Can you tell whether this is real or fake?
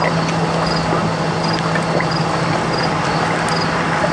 real